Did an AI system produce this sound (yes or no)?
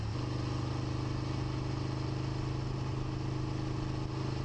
no